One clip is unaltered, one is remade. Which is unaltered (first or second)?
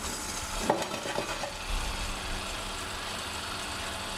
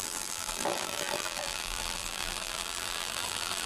first